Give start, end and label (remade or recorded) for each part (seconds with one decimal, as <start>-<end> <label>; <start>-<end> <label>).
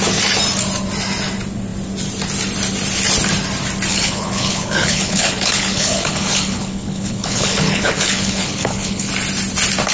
0.0-3.9 recorded; 3.9-9.1 remade; 9.1-9.9 recorded